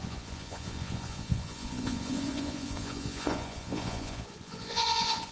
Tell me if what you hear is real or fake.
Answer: fake